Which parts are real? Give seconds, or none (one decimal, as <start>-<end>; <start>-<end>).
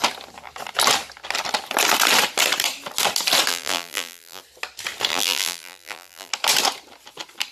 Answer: 0.0-3.5; 4.4-5.1; 6.3-7.5